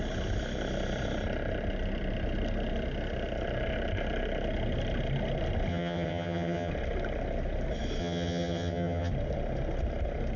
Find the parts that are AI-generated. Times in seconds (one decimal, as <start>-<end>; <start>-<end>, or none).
5.7-6.7; 8.0-9.1

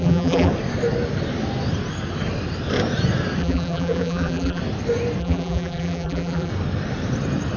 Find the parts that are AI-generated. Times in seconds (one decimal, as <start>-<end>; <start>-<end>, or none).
0.0-0.5; 3.4-4.6; 5.2-6.5

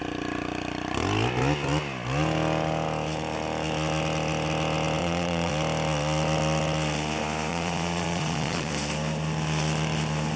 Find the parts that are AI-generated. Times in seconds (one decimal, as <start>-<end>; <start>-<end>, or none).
5.0-5.5; 7.5-8.7

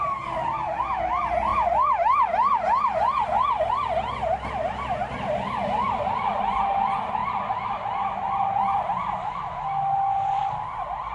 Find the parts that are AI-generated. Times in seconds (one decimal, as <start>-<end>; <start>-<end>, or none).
none